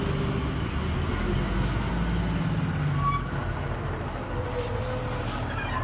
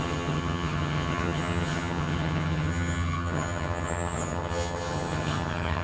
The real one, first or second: first